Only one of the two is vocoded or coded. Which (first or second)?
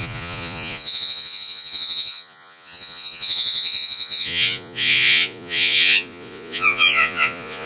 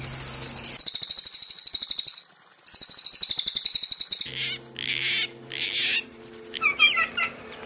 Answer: first